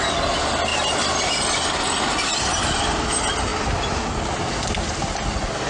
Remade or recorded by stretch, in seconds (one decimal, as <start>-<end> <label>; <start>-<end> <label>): 0.0-5.7 recorded